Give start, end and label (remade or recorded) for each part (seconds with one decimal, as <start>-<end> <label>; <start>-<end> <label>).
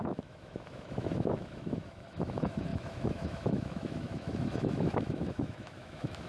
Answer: 0.0-6.3 remade